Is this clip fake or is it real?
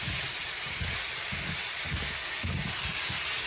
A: real